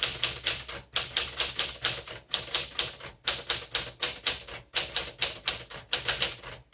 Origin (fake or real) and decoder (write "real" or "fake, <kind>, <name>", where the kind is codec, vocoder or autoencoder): real